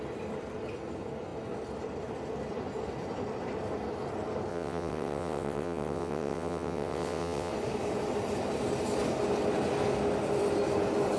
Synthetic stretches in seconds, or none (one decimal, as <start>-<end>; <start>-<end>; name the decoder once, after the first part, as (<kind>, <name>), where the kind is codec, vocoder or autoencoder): 4.5-7.5 (vocoder, WaveNeXt)